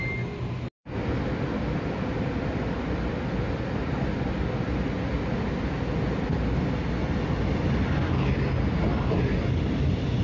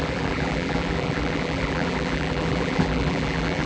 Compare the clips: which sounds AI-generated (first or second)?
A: second